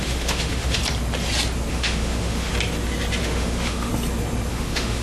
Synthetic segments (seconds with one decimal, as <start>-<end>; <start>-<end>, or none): 0.0-0.8; 1.7-2.5; 3.2-3.9; 4.5-5.0